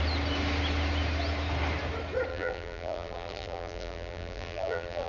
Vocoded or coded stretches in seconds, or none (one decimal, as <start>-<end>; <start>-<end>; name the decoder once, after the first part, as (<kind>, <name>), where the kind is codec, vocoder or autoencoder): 2.3-5.1 (vocoder, BigVGAN v2)